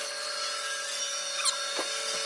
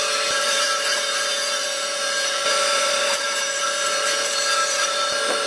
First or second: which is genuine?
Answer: first